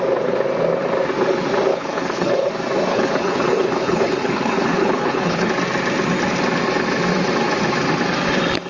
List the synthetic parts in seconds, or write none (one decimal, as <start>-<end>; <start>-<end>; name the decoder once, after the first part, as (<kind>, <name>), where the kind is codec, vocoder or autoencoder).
1.7-2.5 (codec, HILCodec); 2.9-5.5